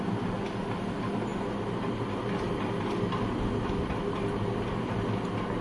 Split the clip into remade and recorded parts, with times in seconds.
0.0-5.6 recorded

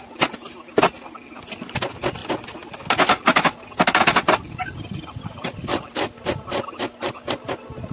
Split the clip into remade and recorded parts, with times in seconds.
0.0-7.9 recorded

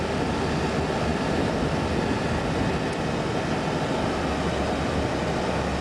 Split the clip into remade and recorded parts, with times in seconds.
0.0-5.8 recorded